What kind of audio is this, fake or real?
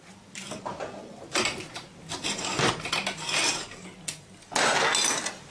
real